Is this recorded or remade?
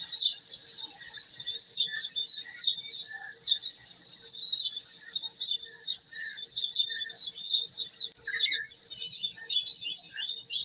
recorded